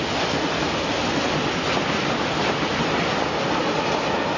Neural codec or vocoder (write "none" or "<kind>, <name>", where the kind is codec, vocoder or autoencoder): none